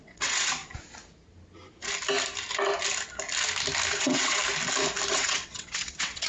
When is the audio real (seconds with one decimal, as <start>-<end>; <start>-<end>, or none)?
0.6-3.9; 4.4-5.1